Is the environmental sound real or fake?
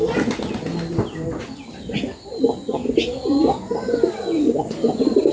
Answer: real